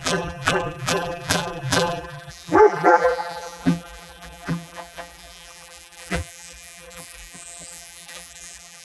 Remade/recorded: remade